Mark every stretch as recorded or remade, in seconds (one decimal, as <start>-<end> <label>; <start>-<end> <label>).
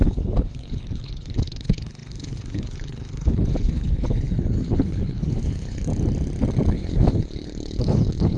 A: 0.0-5.9 remade; 5.9-6.7 recorded; 6.7-8.4 remade